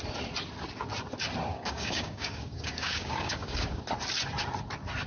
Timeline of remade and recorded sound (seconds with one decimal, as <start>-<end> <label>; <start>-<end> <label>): 0.0-1.5 recorded; 1.5-3.8 remade; 3.8-5.1 recorded